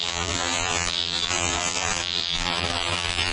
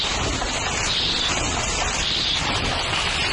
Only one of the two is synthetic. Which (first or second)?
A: first